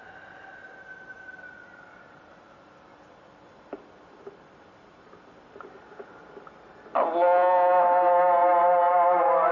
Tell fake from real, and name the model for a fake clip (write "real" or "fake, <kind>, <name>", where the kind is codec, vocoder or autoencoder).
real